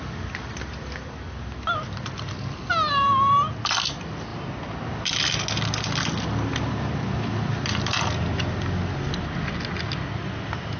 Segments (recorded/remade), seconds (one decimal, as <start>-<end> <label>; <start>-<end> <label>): 0.0-10.8 recorded